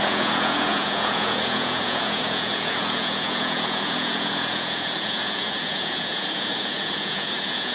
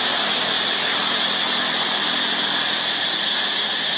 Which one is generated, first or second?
first